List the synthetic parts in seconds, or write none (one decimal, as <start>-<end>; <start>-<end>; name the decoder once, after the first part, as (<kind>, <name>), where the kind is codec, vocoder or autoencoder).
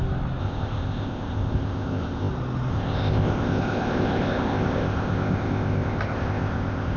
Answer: 0.4-2.3 (codec, ZipCodec); 2.7-7.0